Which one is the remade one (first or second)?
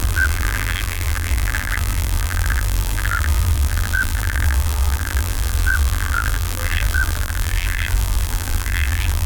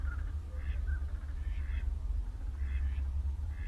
first